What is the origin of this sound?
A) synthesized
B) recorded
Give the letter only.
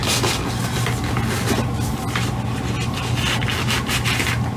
B